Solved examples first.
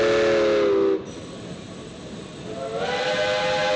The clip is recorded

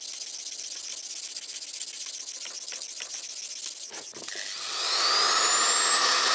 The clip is recorded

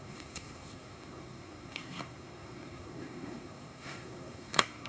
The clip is remade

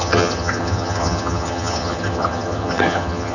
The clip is remade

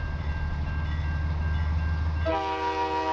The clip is recorded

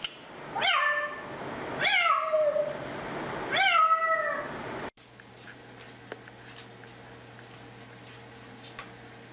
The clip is recorded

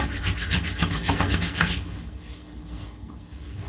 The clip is remade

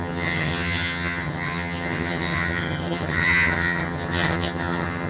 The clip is remade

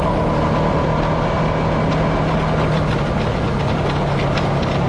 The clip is recorded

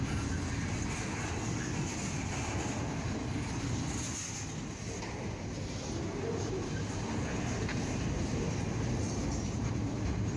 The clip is recorded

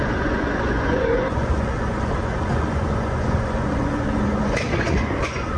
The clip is remade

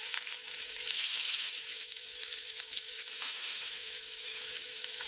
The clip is remade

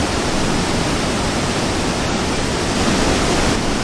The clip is recorded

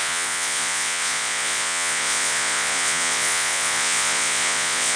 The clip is remade